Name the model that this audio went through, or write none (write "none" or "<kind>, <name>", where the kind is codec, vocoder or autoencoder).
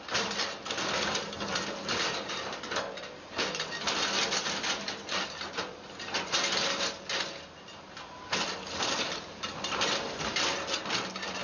none